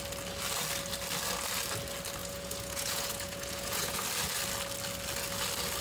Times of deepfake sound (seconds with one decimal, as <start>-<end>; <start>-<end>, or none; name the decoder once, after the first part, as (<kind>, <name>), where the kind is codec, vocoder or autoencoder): 2.2-4.0 (vocoder, Vocos)